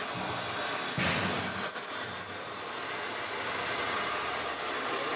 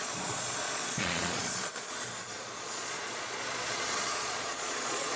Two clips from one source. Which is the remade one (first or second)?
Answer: second